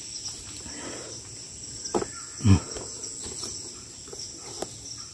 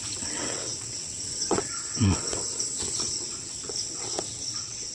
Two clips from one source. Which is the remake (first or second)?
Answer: second